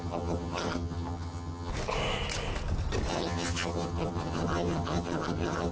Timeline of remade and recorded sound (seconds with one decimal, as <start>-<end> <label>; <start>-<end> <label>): 0.0-1.7 remade; 1.7-3.1 recorded; 3.1-5.7 remade